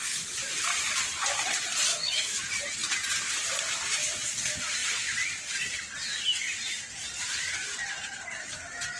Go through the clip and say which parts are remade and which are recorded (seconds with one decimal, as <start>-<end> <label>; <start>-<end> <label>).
0.0-1.9 recorded; 1.9-2.4 remade; 2.4-9.0 recorded